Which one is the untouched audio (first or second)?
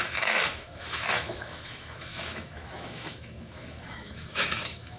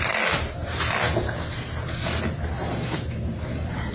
second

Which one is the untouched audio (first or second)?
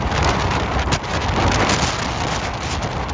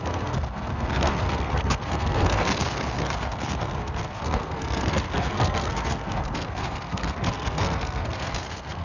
first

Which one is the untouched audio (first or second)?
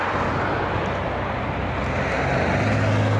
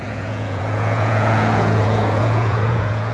first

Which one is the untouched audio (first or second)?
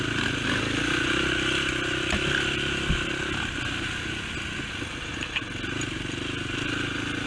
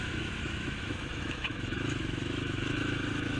first